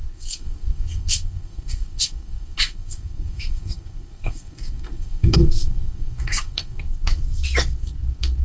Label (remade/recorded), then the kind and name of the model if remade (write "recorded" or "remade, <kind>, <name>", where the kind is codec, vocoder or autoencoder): remade, codec, SNAC